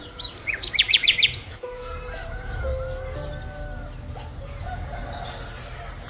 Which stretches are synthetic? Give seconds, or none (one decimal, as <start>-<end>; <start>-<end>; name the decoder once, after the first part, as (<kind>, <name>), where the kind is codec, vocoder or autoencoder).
0.0-2.7 (vocoder, Vocos); 4.6-5.0

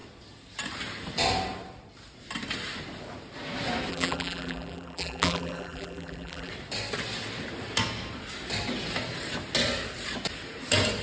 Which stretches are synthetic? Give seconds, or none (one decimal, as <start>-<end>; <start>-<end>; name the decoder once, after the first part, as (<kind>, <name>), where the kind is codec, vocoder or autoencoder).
3.9-6.5 (vocoder, BigVGAN v2)

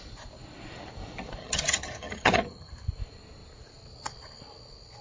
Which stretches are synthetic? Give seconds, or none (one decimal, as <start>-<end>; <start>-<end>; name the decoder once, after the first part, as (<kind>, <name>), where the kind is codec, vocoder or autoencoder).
1.4-2.7 (vocoder, HiFi-GAN)

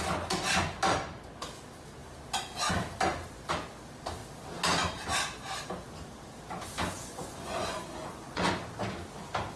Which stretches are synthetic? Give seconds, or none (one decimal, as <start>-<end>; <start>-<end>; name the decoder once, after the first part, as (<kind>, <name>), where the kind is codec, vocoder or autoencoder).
7.0-8.5 (vocoder, Vocos)